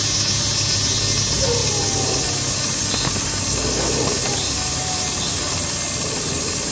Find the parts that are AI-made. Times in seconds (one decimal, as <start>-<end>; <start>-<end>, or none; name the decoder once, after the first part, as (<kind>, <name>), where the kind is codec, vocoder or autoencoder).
none